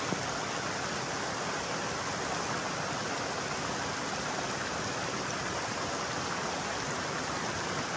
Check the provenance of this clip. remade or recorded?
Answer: recorded